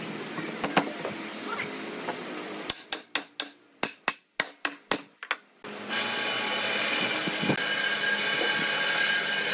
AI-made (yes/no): no